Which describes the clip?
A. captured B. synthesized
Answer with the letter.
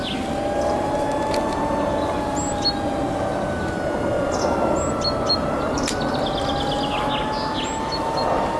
A